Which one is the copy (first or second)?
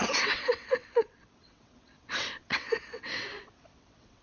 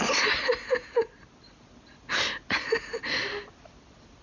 first